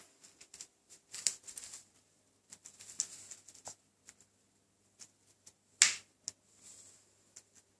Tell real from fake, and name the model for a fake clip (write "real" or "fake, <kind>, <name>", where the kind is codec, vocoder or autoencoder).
real